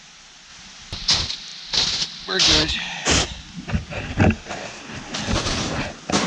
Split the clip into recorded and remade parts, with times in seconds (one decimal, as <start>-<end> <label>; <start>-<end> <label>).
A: 0.0-0.5 recorded; 0.5-1.1 remade; 1.1-6.3 recorded